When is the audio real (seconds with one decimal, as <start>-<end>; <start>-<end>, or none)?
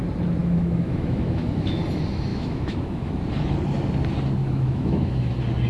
0.0-0.4; 1.8-2.3; 3.1-4.4; 5.3-5.7